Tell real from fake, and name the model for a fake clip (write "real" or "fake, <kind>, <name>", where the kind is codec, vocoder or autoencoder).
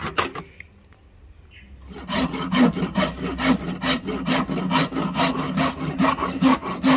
real